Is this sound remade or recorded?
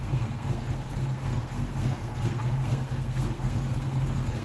remade